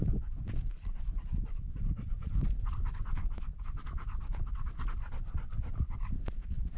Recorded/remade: recorded